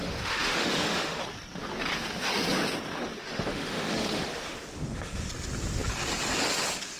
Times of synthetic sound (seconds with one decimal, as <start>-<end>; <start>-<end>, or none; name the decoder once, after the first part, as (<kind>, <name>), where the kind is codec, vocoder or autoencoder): 0.0-1.2 (autoencoder, DAC-VAE); 3.2-5.3